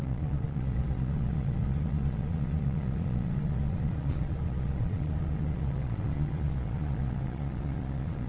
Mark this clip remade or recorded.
remade